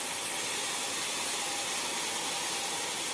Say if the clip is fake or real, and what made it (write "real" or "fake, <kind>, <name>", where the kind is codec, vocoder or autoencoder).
real